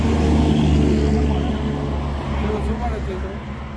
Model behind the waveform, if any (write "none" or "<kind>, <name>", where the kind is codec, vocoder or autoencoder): none